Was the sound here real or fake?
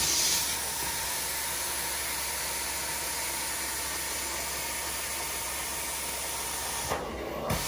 real